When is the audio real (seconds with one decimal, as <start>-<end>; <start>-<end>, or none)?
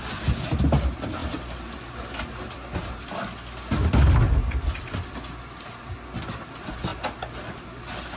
0.0-8.2